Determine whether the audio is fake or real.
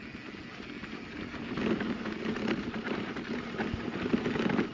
real